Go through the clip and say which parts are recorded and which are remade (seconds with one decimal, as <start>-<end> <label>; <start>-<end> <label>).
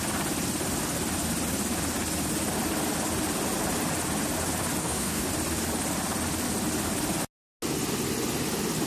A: 0.0-4.8 recorded; 4.8-5.3 remade; 5.3-8.9 recorded